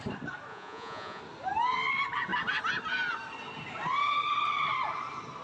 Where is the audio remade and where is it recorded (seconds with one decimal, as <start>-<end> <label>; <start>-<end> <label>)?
0.0-0.5 recorded; 0.5-1.2 remade; 1.2-5.4 recorded